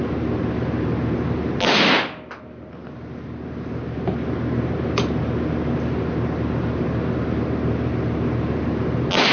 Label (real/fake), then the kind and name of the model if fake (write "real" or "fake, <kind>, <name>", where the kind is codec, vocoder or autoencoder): real